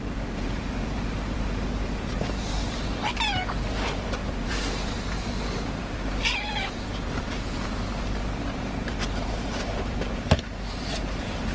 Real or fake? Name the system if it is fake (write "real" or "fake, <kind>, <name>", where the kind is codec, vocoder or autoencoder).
fake, vocoder, BigVGAN v2